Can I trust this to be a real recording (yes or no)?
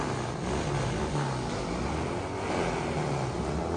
yes